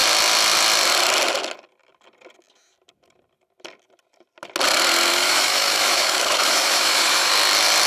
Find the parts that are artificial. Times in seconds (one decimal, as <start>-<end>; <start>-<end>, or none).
5.1-7.3